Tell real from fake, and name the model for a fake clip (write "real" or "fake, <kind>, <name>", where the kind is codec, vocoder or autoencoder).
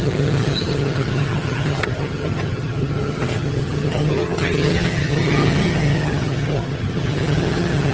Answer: fake, vocoder, HiFi-GAN